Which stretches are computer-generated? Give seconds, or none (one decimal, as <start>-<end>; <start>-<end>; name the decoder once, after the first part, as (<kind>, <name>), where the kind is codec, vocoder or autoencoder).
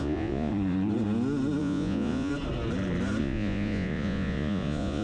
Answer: 0.0-0.5 (vocoder, Vocos); 1.6-2.3; 3.2-5.0